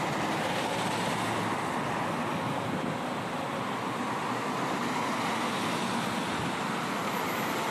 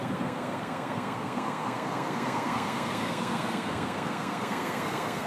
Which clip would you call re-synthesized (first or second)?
second